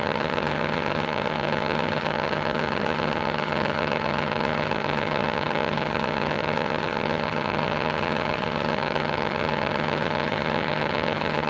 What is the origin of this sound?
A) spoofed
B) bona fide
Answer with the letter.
A